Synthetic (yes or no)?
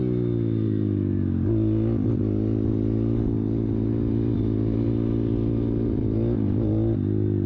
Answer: no